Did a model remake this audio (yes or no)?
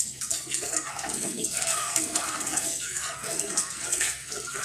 yes